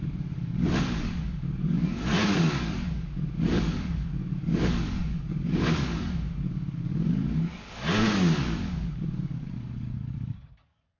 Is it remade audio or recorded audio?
remade